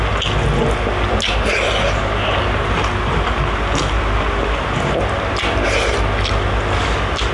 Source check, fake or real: real